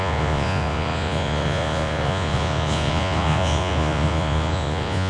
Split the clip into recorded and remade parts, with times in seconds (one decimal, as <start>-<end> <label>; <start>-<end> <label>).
0.0-5.1 remade